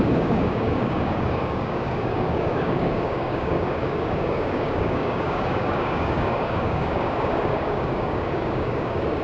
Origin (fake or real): fake